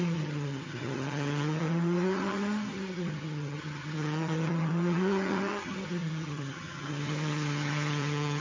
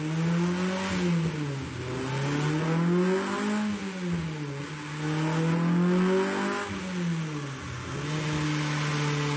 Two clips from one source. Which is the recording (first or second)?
second